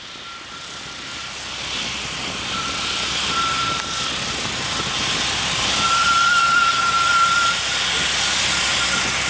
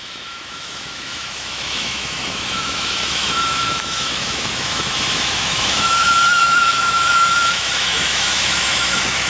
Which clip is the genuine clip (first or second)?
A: first